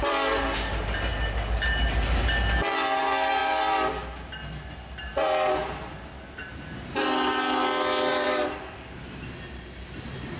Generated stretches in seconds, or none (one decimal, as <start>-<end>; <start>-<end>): 8.1-8.6